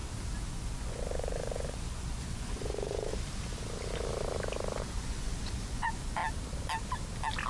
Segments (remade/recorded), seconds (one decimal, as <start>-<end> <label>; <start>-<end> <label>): 0.0-0.5 recorded; 0.5-3.1 remade; 3.1-4.8 recorded; 4.8-6.2 remade; 6.2-7.5 recorded